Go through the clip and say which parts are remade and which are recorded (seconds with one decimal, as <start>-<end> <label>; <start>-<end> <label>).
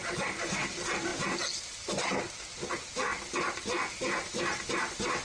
0.0-5.2 recorded